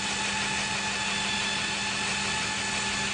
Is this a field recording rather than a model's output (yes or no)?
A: yes